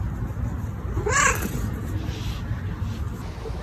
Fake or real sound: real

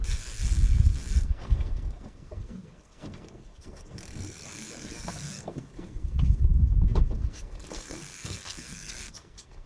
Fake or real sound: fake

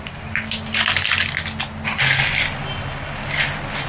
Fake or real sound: real